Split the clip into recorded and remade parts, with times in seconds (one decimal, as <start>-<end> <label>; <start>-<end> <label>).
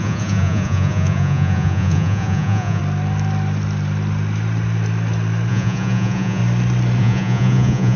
0.0-2.8 remade; 2.8-5.5 recorded; 5.5-6.4 remade; 6.4-7.0 recorded; 7.0-8.0 remade